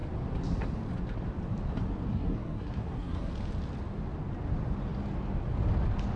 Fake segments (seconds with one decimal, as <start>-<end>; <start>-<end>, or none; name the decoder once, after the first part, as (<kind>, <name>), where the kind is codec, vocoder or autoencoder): 2.1-3.3 (codec, SNAC)

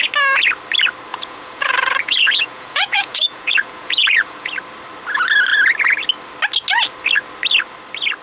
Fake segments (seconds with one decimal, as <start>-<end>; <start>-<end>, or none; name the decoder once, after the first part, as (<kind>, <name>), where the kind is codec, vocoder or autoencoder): 1.1-4.5 (vocoder, Vocos)

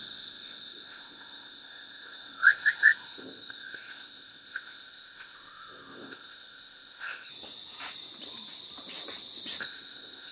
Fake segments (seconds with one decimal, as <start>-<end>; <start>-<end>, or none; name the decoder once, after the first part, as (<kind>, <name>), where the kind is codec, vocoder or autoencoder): 0.0-7.3 (codec, ZipCodec); 9.6-10.3

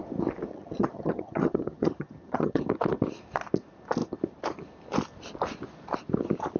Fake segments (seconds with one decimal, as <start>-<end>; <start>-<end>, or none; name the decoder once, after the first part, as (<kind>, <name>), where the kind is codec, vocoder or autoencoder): 0.5-2.6 (vocoder, HiFi-GAN)

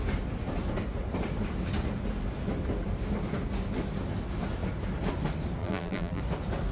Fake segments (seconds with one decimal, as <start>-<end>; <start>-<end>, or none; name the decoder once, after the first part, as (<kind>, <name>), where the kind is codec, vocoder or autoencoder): 5.6-6.2 (vocoder, BigVGAN v2)

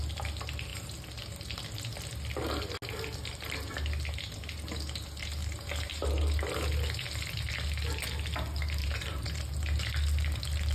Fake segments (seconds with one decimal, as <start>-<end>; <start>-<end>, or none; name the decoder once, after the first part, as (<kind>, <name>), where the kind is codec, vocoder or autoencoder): 5.4-6.2 (vocoder, BigVGAN v2); 8.8-9.4